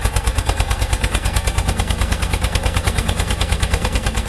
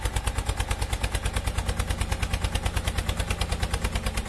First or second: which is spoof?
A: first